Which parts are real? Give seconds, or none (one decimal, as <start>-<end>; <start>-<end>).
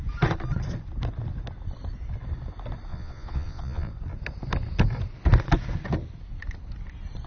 0.0-2.9; 3.9-7.3